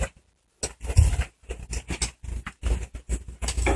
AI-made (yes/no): no